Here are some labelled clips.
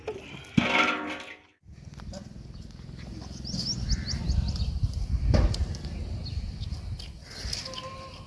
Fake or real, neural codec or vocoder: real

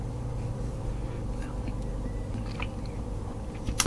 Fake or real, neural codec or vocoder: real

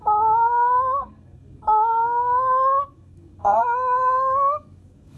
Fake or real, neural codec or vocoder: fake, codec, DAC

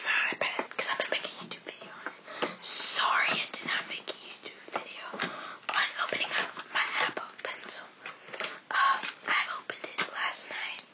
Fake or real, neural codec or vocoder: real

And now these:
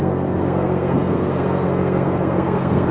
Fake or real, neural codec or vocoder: fake, codec, SNAC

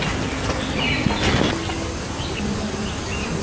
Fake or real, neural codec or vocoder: real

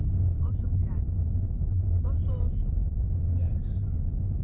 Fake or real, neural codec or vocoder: fake, vocoder, BigVGAN v2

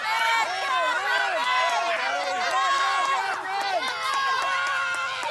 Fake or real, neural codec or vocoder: real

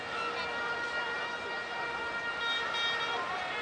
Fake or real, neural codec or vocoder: real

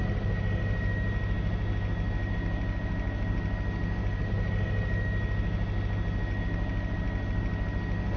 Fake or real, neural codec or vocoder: real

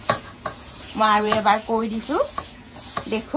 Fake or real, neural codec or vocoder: fake, vocoder, Vocos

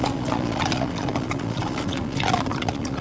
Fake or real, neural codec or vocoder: fake, vocoder, Vocos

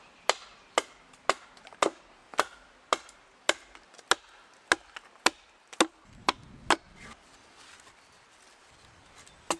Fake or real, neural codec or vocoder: real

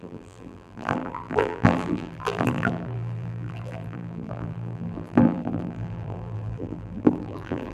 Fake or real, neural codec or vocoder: fake, vocoder, BigVGAN v2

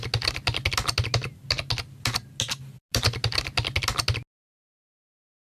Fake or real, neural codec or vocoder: real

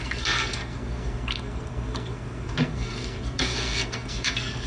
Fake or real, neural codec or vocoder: fake, codec, SNAC